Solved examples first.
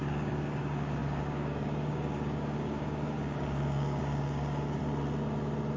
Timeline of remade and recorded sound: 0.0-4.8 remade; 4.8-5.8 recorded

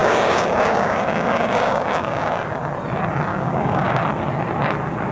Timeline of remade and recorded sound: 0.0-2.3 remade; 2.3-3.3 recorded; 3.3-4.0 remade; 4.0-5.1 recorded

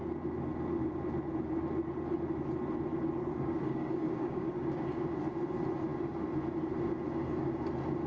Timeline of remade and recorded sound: 0.0-3.3 recorded; 3.3-4.8 remade; 4.8-8.1 recorded

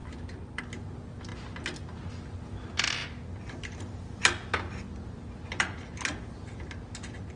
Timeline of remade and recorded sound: 0.0-7.4 recorded